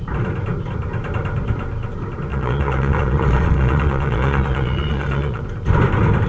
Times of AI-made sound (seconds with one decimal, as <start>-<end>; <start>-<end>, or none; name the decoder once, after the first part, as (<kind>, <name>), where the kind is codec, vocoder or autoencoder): 2.3-5.4 (vocoder, Vocos)